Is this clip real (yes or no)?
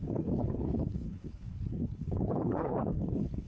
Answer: no